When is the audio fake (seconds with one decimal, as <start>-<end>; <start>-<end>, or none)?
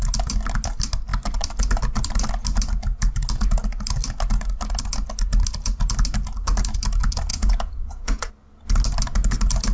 7.3-8.3